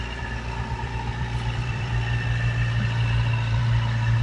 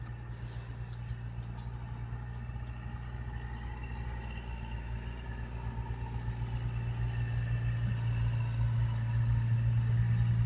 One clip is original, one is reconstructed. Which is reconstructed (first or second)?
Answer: first